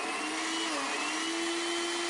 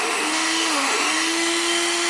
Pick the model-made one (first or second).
second